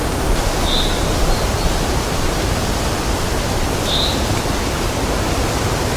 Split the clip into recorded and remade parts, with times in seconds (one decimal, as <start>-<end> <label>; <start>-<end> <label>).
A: 0.0-4.1 recorded; 4.1-4.9 remade; 4.9-6.0 recorded